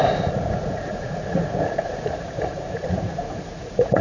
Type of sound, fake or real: fake